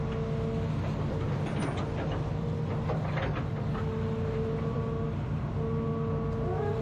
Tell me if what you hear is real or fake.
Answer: real